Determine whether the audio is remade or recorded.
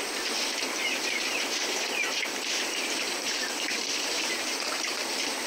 remade